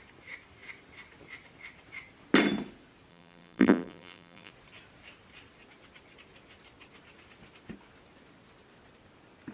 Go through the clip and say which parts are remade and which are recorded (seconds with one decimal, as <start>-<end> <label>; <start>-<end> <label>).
0.0-3.1 recorded; 3.1-4.5 remade; 4.5-9.5 recorded